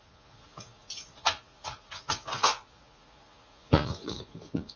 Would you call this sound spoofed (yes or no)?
yes